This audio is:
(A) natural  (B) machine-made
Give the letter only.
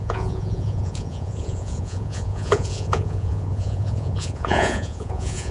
B